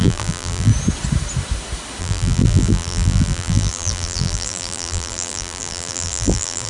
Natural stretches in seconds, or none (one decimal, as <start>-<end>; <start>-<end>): 0.7-2.0